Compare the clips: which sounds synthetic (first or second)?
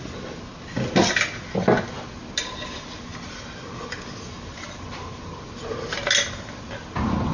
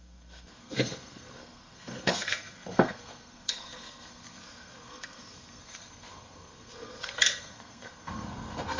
second